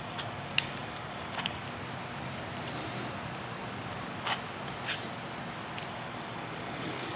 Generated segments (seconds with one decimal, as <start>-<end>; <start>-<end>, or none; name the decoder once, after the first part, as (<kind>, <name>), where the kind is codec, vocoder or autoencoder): 0.0-1.6 (codec, DAC); 5.9-7.2